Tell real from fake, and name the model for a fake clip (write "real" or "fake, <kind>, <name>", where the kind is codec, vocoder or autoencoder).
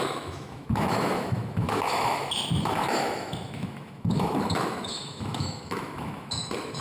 fake, autoencoder, DAC-VAE